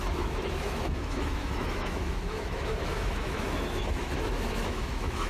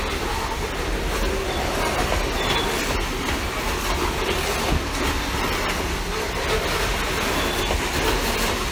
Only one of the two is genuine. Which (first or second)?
second